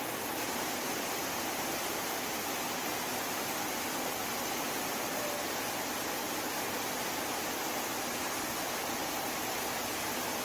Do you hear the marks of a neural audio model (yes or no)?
no